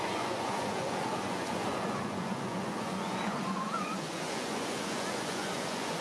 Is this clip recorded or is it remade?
remade